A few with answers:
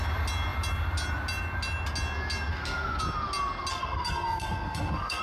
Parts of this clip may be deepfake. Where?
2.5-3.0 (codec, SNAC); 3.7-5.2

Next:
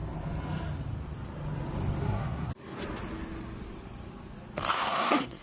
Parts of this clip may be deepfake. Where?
2.0-2.5 (codec, SNAC); 4.7-5.4

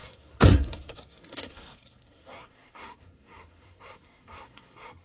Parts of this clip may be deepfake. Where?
0.0-5.0 (codec, SNAC)

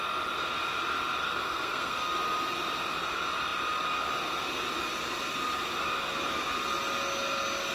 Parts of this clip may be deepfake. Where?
1.2-2.1 (codec, SNAC)